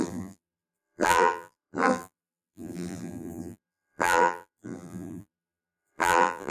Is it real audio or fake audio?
fake